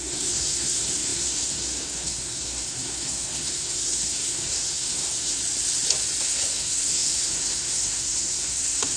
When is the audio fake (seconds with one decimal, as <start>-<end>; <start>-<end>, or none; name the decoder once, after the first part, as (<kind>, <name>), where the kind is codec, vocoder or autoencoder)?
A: 0.0-5.4 (codec, SNAC); 6.2-9.0